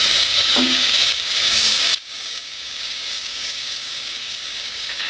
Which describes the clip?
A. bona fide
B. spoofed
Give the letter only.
B